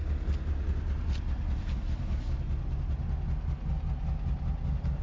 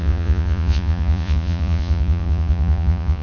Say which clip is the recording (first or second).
first